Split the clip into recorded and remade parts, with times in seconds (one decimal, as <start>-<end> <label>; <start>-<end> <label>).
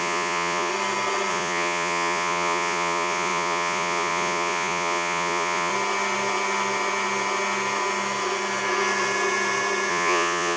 0.0-0.7 remade; 0.7-1.3 recorded; 1.3-5.7 remade; 5.7-9.9 recorded; 9.9-10.6 remade